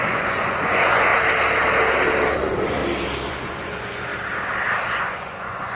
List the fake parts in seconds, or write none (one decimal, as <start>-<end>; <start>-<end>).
0.0-1.1; 2.3-2.8; 3.3-4.1; 4.9-5.8